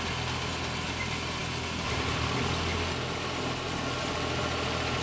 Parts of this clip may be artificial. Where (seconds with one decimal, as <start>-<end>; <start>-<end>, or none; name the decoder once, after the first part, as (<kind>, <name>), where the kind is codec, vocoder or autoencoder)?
none